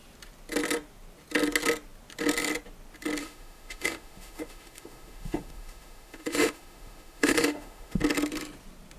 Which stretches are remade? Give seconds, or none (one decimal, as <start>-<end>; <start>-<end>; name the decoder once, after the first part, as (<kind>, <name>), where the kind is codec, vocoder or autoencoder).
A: 3.2-8.0 (autoencoder, DAC-VAE)